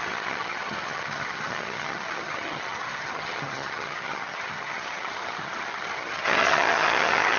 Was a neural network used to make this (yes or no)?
yes